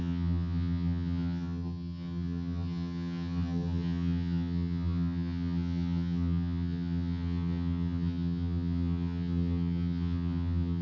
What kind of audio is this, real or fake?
fake